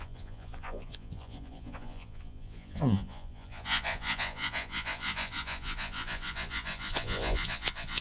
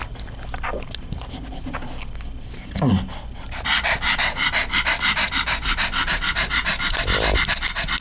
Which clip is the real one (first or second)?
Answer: second